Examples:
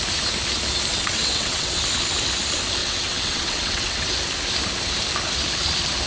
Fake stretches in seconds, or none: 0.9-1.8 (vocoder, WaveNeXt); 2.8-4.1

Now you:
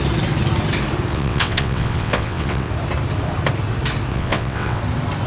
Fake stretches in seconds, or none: 1.1-2.7 (vocoder, WaveNeXt); 4.1-4.8

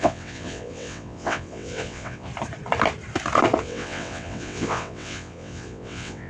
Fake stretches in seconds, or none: 0.0-2.3 (vocoder, WaveNeXt); 3.6-6.3

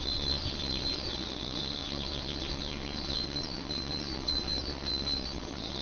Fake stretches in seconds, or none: 0.0-5.8 (vocoder, WaveNeXt)

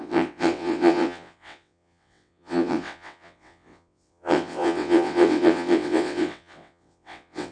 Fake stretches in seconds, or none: 0.0-7.5 (vocoder, WaveNeXt)

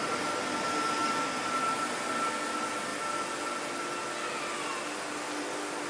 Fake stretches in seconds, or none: none

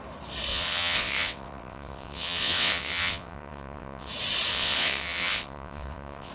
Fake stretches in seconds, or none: 0.5-4.1 (vocoder, WaveNeXt); 4.5-6.3

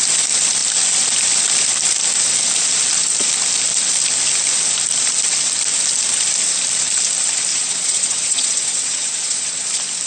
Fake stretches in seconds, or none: 7.5-9.7 (vocoder, WaveNeXt)